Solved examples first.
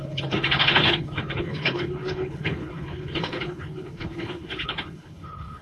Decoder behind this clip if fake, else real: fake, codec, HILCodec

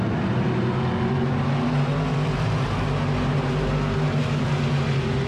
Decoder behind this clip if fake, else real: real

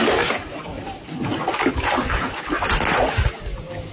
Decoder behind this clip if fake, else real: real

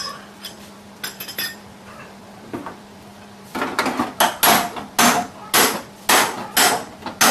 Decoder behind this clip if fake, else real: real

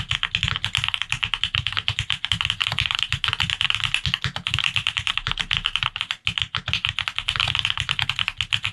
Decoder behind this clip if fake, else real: real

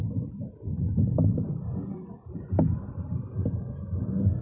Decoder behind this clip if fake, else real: real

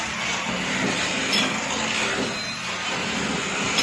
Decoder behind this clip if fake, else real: real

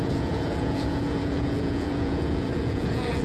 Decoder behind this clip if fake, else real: fake, vocoder, Vocos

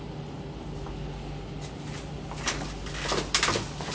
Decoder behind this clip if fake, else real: real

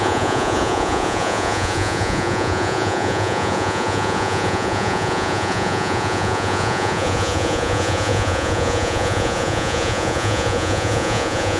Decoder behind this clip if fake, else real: fake, vocoder, Vocos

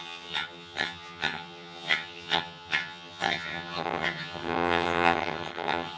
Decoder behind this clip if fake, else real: fake, vocoder, HiFi-GAN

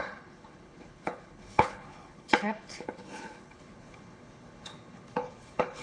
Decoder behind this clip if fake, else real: fake, codec, HILCodec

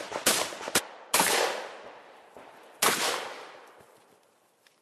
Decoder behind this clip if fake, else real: real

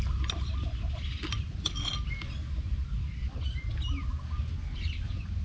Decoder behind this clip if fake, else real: real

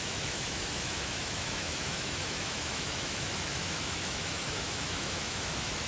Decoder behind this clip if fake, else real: fake, autoencoder, DAC-VAE